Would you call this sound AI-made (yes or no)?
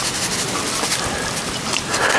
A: no